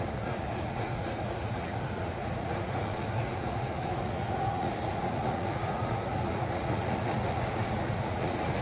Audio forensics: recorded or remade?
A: remade